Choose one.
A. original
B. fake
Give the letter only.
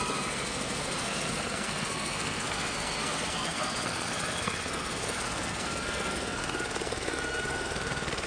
B